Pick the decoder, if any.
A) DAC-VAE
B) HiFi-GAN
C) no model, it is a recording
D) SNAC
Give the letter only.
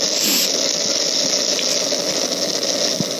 C